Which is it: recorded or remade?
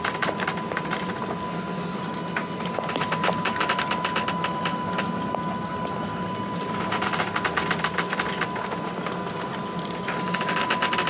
recorded